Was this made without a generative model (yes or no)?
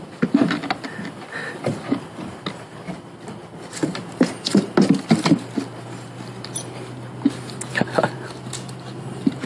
yes